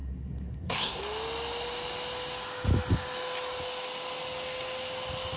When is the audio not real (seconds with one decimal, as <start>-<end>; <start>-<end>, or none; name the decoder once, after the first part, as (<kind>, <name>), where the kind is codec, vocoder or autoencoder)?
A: 0.0-1.0 (codec, SNAC)

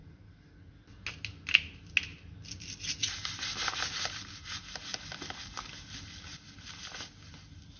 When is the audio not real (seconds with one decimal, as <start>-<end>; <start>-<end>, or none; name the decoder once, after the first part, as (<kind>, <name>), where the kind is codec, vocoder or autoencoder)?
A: none

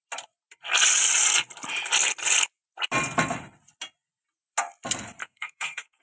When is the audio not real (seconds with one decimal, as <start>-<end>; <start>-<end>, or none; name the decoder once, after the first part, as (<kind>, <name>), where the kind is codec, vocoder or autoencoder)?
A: 5.2-6.0 (codec, SNAC)

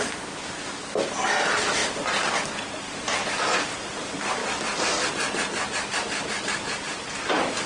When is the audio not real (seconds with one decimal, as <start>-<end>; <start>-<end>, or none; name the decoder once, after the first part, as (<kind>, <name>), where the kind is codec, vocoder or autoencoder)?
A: none

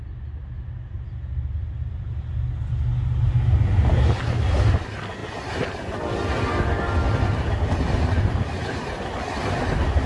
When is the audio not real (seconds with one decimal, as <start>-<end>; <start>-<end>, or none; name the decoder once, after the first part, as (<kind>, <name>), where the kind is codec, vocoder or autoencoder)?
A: none

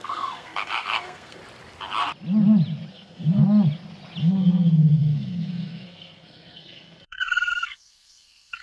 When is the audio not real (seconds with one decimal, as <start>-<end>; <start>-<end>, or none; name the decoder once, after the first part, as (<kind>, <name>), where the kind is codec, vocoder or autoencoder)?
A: 0.0-1.4 (codec, SNAC); 2.9-3.4; 4.2-8.6

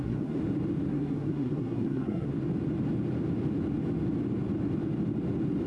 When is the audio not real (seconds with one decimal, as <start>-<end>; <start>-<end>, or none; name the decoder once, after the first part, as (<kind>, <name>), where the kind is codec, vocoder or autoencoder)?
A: 0.0-0.4 (codec, SNAC); 0.9-2.3